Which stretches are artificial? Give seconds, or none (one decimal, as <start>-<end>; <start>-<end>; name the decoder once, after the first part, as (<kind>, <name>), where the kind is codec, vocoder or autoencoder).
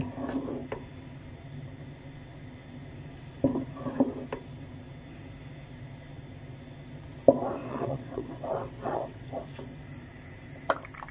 7.6-9.3 (vocoder, WaveNeXt)